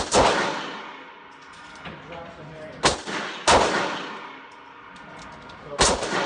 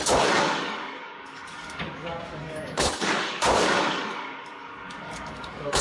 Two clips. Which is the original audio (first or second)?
first